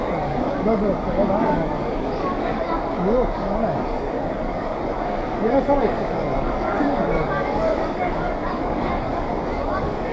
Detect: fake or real fake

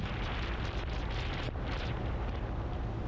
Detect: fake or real real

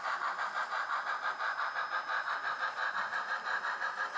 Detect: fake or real real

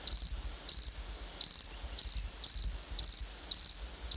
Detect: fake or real real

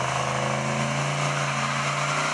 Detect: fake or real real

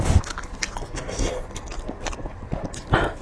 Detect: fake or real real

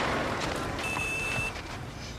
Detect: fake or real fake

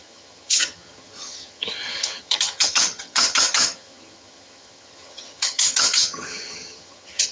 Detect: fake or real fake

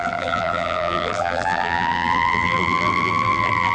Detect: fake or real fake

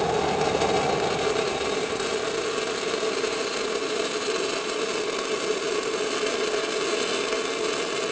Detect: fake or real real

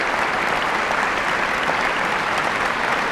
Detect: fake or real real